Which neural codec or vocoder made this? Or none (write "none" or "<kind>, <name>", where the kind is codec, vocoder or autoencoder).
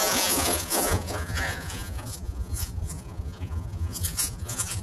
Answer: vocoder, Vocos